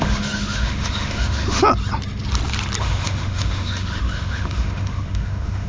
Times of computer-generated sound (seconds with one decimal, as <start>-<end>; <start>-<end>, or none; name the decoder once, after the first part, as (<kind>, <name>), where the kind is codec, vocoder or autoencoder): 0.0-1.6 (autoencoder, DAC-VAE); 2.8-5.7